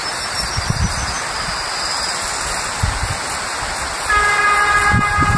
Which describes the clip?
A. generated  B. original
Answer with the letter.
B